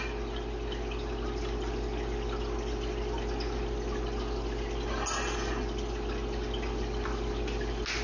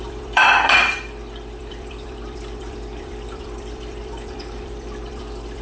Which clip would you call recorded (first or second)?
first